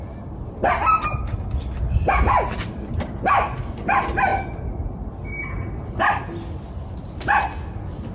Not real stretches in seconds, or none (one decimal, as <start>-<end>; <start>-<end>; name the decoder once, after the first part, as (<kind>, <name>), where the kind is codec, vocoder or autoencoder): none

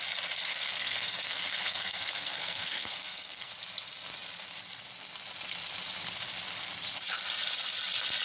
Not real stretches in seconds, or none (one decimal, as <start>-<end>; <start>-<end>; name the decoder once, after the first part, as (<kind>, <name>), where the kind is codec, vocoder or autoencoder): 0.5-3.5 (codec, SNAC)